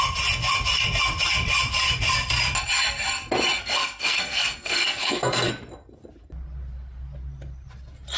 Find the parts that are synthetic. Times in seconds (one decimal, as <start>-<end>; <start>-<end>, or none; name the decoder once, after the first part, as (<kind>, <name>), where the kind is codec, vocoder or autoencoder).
3.6-5.5 (codec, SNAC)